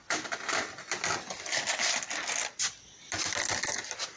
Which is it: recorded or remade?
recorded